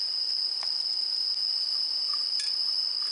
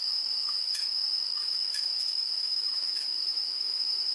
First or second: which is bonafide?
first